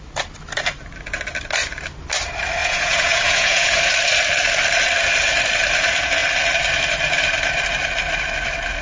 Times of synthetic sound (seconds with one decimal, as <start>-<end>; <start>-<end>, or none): 2.6-3.8

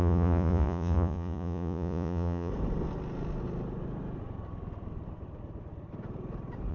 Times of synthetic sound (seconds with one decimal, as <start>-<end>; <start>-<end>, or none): 0.0-2.5

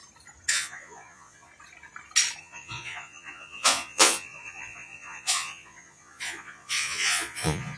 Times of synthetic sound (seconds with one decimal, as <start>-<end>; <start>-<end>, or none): 0.5-1.5; 2.4-7.8

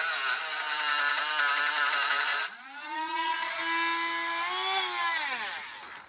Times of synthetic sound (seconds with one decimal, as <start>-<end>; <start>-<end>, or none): 2.3-3.6

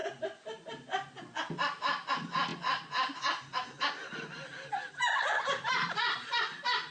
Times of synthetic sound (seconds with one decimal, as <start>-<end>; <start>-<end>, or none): none